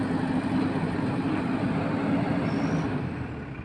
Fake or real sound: real